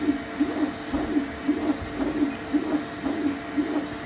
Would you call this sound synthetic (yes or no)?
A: no